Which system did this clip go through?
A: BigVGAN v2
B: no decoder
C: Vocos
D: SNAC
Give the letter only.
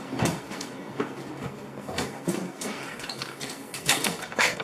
D